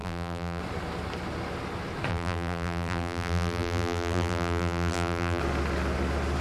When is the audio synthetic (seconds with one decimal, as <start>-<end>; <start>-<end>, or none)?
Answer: 0.0-0.6; 2.1-5.4